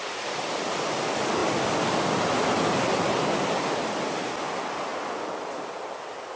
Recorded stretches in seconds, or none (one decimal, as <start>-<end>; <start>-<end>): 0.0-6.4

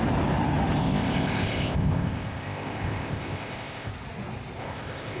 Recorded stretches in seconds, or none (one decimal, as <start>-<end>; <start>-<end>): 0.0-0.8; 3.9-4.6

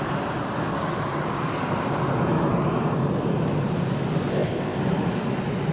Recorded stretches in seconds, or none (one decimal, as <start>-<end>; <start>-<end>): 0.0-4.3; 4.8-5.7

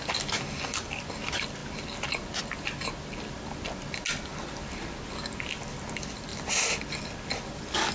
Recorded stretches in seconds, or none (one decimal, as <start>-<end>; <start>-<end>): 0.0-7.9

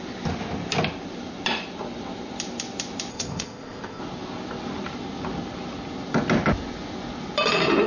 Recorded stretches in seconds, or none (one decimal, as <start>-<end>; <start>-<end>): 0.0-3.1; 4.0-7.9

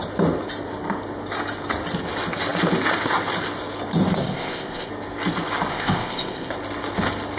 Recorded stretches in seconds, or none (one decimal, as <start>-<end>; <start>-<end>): 0.0-4.2; 4.9-5.7; 6.5-7.4

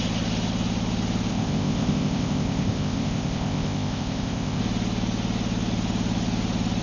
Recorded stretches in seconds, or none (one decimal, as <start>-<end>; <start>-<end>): 0.0-1.3; 4.6-6.8

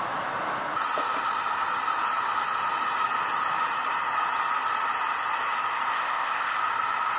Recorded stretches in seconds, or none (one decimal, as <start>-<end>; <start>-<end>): 0.0-5.9; 6.6-7.2